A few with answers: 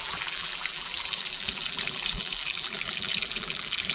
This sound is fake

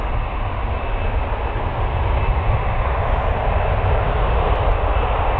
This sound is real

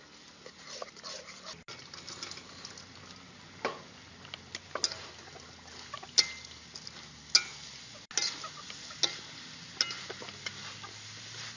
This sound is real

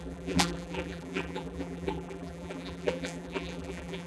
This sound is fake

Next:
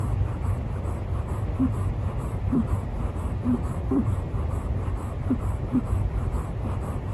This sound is fake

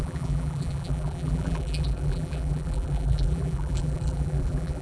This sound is fake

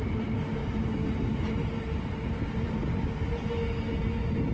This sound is real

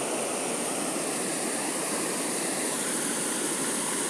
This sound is fake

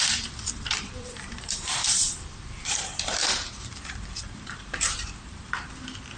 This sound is fake